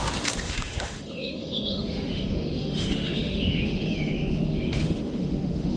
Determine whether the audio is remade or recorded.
remade